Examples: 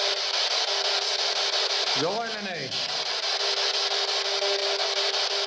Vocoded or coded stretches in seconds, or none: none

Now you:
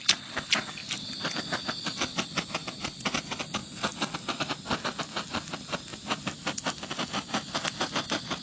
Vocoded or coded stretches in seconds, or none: none